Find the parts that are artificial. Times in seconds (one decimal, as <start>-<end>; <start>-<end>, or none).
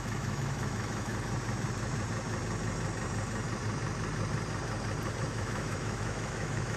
0.0-1.1; 5.2-6.8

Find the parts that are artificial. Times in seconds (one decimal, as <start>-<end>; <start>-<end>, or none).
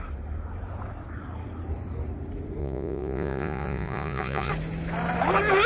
2.6-4.5